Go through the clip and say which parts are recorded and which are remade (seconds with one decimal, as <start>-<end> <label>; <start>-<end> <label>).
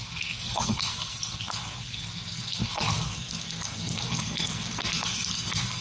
0.0-5.8 remade